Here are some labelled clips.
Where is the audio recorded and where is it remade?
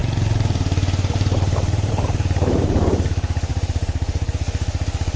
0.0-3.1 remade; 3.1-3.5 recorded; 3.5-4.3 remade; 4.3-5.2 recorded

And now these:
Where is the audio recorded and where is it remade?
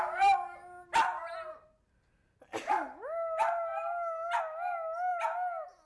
0.0-5.9 recorded